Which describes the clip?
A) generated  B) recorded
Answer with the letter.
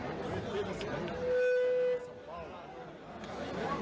B